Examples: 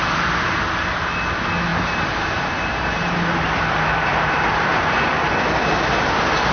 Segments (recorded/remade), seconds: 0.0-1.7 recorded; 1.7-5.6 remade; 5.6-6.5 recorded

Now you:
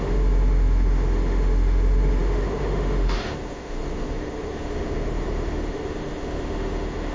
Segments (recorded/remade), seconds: 0.0-7.1 remade